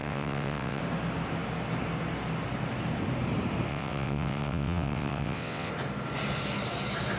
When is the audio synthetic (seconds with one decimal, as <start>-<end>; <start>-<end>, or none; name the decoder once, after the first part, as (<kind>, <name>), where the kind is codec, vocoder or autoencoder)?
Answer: 0.0-0.8 (vocoder, WaveNeXt); 3.7-5.7